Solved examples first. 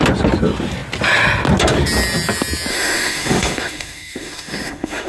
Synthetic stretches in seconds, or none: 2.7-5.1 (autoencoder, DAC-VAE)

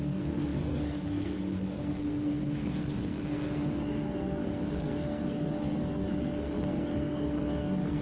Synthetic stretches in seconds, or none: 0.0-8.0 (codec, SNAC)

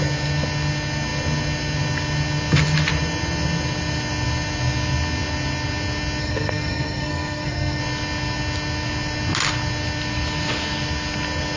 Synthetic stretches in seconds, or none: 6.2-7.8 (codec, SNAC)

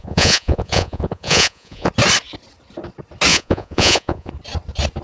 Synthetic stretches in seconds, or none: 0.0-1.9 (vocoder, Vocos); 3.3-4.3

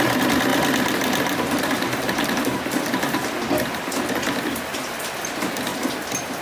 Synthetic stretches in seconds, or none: none